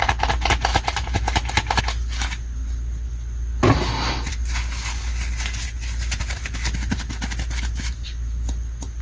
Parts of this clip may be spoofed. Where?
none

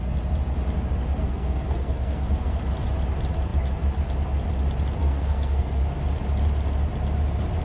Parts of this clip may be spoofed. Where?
1.2-2.6 (codec, SNAC); 5.0-5.8

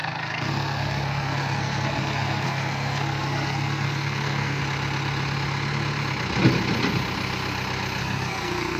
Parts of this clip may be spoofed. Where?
0.0-4.6 (codec, SNAC); 8.0-8.8

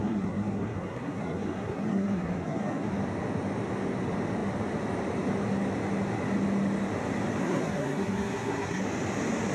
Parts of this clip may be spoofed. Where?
0.0-2.9 (codec, SNAC); 7.4-8.8

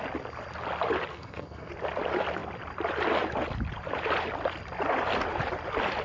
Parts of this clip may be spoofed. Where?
1.1-1.7 (codec, SNAC)

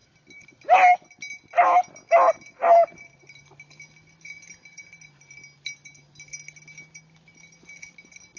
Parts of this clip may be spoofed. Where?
none